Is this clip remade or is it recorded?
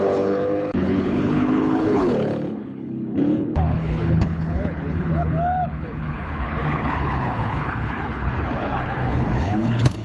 remade